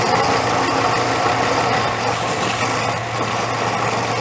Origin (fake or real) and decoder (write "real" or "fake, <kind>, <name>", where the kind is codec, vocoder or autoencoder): real